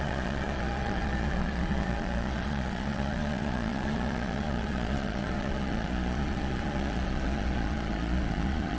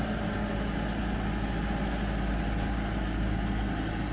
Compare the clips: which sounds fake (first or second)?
first